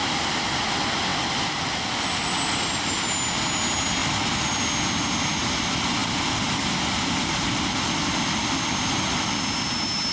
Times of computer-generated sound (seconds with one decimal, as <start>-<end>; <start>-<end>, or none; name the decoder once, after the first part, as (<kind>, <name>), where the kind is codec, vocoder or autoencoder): 0.0-0.6 (vocoder, BigVGAN v2); 4.0-4.6; 6.0-7.6